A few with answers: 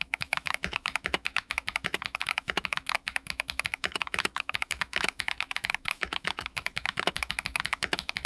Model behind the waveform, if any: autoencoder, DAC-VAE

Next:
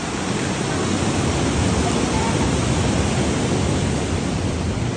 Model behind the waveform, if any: none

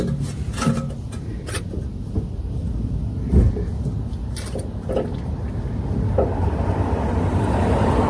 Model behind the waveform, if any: none